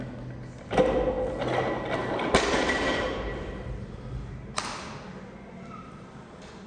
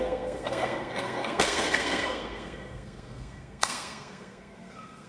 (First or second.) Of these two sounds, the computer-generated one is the second